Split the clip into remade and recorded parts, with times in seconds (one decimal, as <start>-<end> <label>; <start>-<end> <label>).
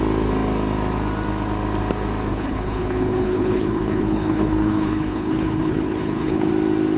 0.0-2.3 recorded; 2.3-6.5 remade; 6.5-7.0 recorded